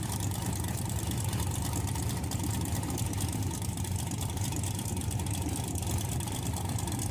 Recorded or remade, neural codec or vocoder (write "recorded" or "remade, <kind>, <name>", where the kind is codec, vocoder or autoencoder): remade, vocoder, BigVGAN v2